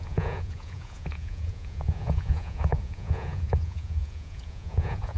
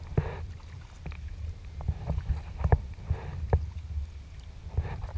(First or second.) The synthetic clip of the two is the first